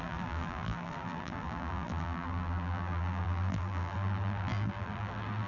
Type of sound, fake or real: fake